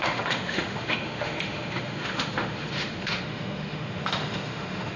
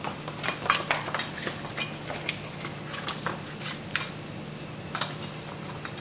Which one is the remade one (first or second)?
first